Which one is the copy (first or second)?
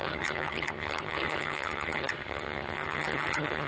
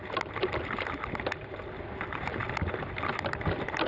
first